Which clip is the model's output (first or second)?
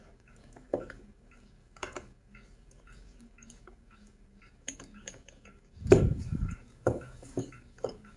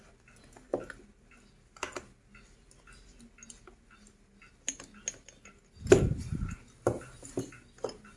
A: first